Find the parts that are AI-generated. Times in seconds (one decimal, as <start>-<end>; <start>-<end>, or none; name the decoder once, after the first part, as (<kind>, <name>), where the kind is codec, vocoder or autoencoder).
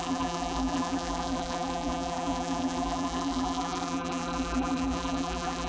0.0-5.7 (vocoder, BigVGAN v2)